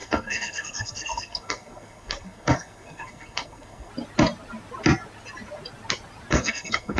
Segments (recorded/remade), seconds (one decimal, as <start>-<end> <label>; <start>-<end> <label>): 0.0-3.9 remade; 3.9-6.3 recorded; 6.3-7.0 remade